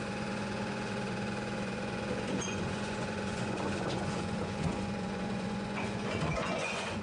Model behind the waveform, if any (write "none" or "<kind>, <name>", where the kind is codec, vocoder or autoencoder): vocoder, Vocos